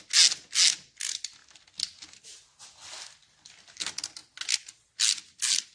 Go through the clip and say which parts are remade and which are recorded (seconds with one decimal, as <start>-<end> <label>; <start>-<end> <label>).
0.0-5.7 recorded